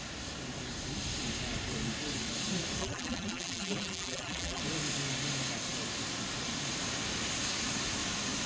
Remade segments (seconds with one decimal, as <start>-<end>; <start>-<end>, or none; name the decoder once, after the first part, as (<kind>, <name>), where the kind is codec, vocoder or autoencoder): 2.8-4.6 (vocoder, BigVGAN v2)